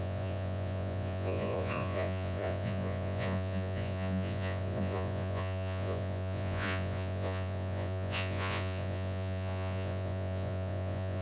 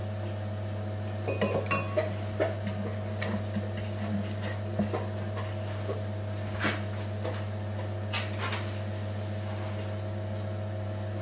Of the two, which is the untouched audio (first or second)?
second